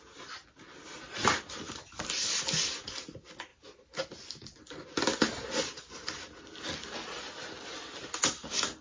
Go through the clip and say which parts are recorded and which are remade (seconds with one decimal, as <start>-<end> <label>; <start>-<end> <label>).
0.0-8.8 recorded